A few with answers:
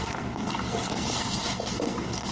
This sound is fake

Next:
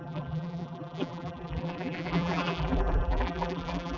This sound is fake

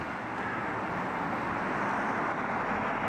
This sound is real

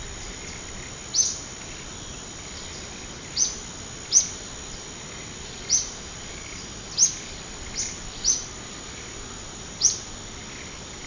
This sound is real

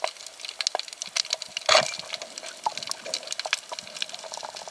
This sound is real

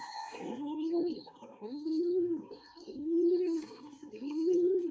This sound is fake